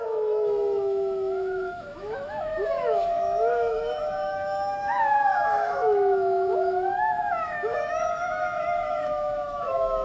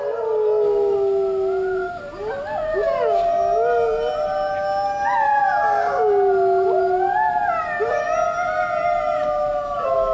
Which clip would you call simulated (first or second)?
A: first